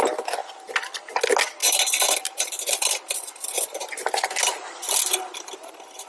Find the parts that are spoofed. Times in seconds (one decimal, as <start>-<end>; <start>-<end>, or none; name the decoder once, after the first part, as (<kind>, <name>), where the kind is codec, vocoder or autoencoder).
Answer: none